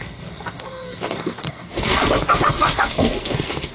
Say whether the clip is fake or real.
fake